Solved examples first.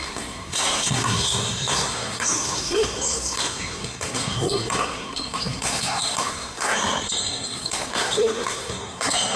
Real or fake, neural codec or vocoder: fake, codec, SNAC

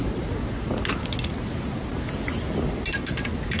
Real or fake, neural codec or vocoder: real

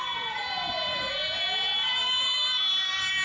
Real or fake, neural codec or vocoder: real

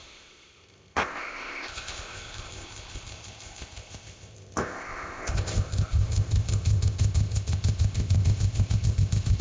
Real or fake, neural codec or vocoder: fake, codec, ZipCodec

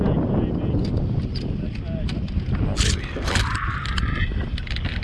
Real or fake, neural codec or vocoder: real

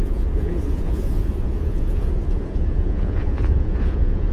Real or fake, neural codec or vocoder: fake, vocoder, Vocos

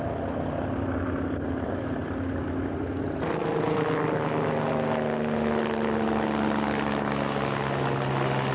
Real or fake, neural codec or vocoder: real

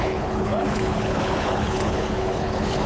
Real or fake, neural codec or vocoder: fake, codec, HILCodec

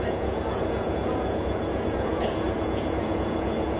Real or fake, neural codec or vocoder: fake, vocoder, Vocos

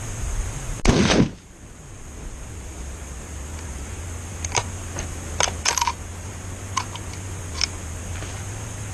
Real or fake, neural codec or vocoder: real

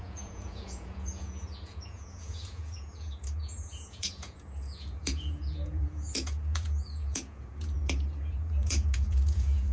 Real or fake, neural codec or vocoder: fake, vocoder, Vocos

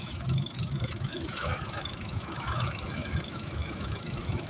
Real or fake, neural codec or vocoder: fake, autoencoder, DAC-VAE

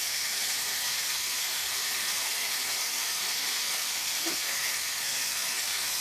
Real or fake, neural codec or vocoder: fake, codec, SNAC